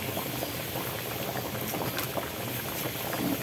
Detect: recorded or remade recorded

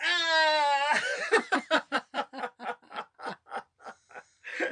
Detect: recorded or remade recorded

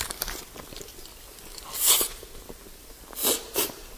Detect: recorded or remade remade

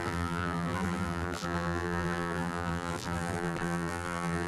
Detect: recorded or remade remade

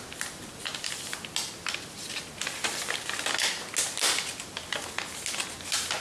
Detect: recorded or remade recorded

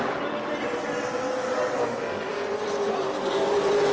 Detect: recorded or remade recorded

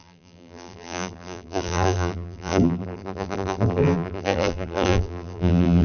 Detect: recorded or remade remade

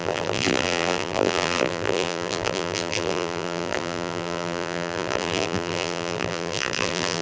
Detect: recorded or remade remade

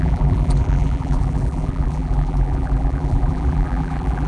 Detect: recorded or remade remade